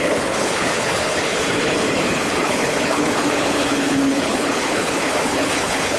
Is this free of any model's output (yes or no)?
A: no